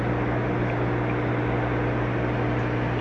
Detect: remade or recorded recorded